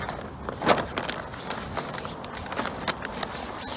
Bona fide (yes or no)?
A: yes